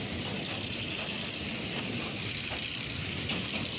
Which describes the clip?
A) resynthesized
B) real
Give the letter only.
B